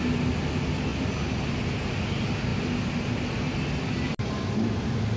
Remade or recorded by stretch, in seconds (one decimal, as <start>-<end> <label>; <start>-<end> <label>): 0.0-5.2 recorded